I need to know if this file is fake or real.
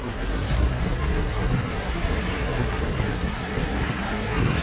fake